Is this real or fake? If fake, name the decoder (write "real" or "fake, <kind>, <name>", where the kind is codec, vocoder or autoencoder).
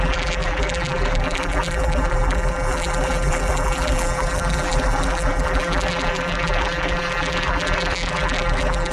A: fake, vocoder, BigVGAN v2